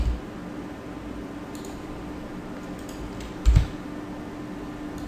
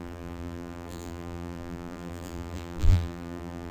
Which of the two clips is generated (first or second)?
second